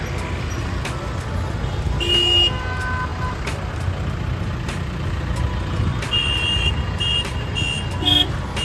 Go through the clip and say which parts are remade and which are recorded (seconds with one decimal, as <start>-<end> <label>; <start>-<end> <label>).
0.0-3.1 recorded; 3.1-3.7 remade; 3.7-5.9 recorded; 5.9-6.7 remade; 6.7-8.6 recorded